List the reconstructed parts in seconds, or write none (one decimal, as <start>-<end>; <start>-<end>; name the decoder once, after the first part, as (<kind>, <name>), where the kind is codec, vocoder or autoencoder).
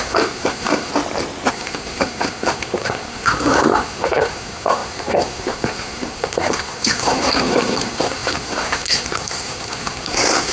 0.0-0.9 (codec, SNAC); 1.5-10.5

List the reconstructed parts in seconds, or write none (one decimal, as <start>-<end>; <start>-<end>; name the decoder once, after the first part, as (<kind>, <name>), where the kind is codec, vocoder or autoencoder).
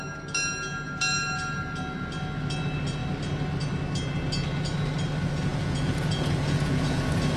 5.5-7.0 (vocoder, Vocos)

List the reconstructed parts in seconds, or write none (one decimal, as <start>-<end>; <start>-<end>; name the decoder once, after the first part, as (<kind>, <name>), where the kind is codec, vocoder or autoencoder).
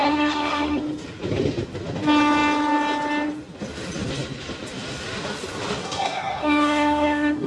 0.0-0.8 (codec, SNAC); 5.8-7.5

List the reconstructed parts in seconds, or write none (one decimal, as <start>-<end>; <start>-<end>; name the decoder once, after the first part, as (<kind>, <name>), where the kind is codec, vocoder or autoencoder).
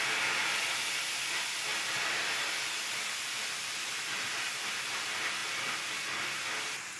none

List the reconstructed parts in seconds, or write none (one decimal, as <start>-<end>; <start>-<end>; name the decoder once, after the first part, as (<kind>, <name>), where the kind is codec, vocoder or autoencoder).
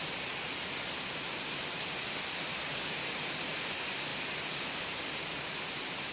none